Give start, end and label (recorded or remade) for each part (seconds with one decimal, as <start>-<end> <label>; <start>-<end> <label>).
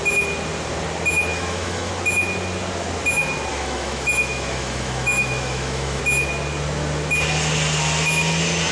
0.0-1.3 recorded; 1.3-1.9 remade; 1.9-3.5 recorded; 3.5-6.0 remade; 6.0-8.7 recorded